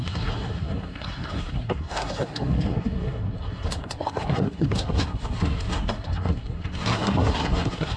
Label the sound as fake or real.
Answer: fake